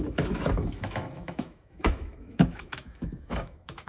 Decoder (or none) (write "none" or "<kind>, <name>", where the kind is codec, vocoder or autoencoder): autoencoder, DAC-VAE